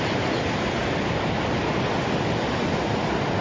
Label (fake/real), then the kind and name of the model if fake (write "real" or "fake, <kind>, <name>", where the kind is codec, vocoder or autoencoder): real